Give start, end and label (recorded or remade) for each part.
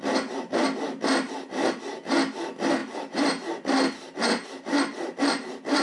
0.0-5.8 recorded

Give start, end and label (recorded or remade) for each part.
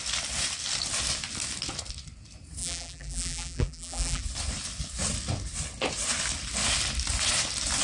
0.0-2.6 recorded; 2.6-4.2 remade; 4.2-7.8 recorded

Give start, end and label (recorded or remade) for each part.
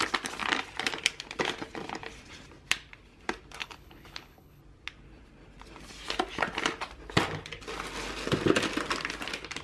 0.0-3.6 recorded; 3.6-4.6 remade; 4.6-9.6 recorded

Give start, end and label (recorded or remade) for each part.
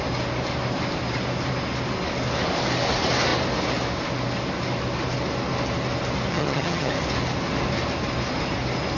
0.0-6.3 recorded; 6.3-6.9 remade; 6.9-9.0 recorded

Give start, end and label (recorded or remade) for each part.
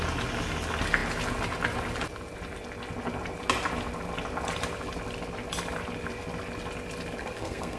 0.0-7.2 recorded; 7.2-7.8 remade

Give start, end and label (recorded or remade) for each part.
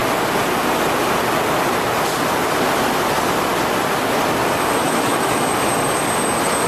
0.0-4.8 recorded; 4.8-5.5 remade; 5.5-6.7 recorded